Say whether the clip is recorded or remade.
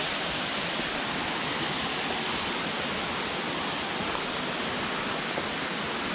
recorded